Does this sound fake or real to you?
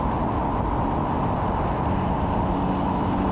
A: real